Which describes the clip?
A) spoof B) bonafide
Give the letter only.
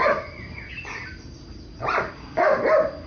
B